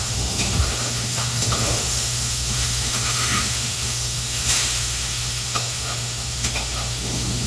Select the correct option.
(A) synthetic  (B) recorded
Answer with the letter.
A